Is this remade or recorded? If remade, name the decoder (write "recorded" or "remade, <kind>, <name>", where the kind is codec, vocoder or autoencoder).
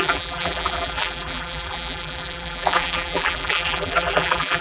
remade, vocoder, BigVGAN v2